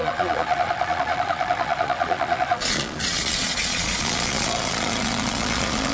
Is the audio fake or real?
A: fake